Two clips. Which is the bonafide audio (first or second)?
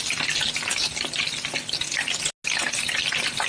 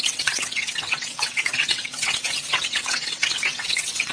first